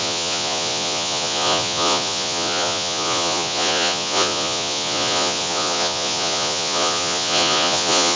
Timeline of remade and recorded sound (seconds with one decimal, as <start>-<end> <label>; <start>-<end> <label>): 0.0-8.2 remade